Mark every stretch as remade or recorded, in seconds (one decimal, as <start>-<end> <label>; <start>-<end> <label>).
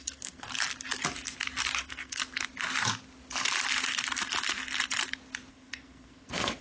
0.0-0.5 remade; 0.5-1.8 recorded; 1.8-2.2 remade; 2.2-5.5 recorded; 5.5-6.6 remade